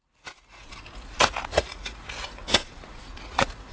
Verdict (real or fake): fake